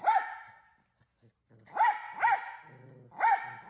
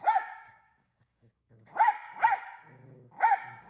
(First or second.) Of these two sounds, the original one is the first